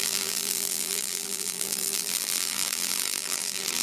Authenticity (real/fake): fake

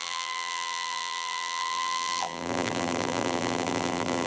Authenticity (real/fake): fake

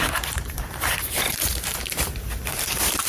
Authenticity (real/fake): fake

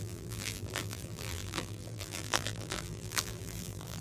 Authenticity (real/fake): fake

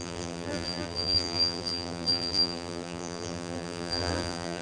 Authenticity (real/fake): fake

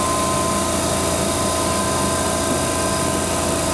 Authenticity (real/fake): real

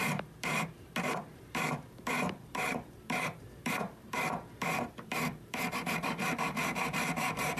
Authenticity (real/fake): fake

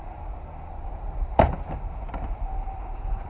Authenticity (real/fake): fake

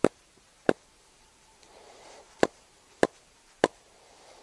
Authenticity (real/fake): fake